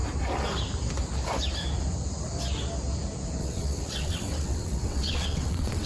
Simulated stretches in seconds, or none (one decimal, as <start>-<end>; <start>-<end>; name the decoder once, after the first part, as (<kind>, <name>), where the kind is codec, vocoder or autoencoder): 3.4-5.9 (vocoder, WaveNeXt)